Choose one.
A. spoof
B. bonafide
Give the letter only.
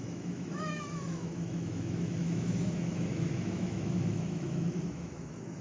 A